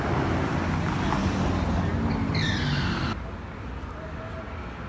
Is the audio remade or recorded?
recorded